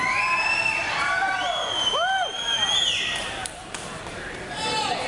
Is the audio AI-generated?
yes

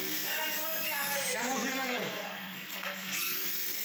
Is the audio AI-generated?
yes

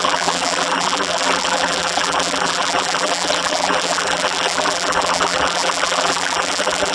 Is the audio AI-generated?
yes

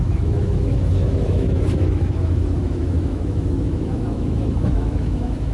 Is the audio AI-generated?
yes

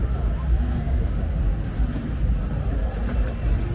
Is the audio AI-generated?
no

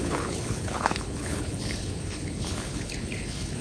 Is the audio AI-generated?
yes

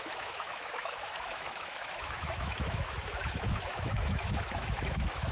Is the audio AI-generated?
yes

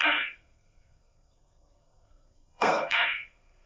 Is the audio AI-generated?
yes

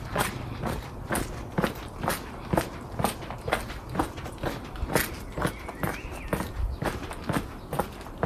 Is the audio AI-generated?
no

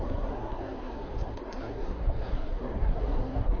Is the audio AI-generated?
yes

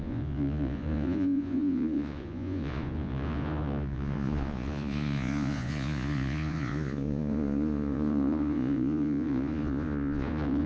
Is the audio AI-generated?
yes